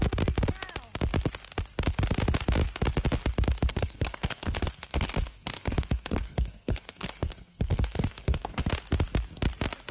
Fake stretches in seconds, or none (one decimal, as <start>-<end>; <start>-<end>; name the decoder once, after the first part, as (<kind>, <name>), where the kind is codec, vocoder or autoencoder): 3.7-8.7 (codec, SNAC)